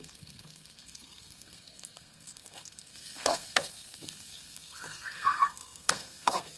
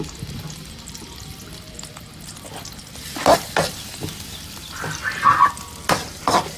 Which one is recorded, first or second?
second